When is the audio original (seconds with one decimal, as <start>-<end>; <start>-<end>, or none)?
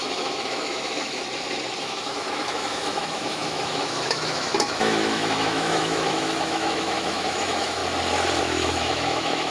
1.2-1.8; 7.8-8.4